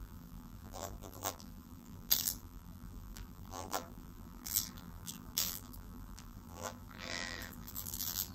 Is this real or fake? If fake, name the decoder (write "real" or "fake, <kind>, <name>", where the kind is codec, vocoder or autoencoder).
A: fake, vocoder, BigVGAN v2